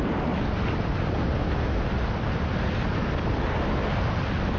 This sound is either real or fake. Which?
real